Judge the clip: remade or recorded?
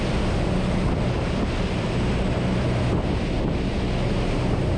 recorded